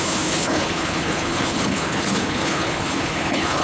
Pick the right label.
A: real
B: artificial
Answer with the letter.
B